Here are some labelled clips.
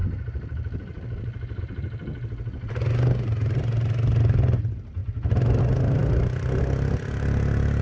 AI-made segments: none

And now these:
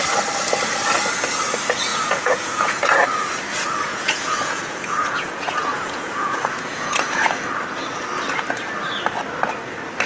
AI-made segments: 1.9-2.8 (vocoder, Vocos); 3.9-7.2

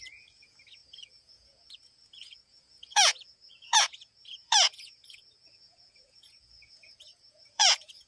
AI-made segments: 0.0-8.1 (vocoder, Vocos)

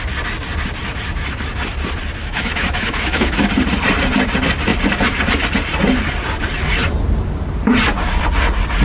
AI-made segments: 2.2-3.5 (autoencoder, DAC-VAE)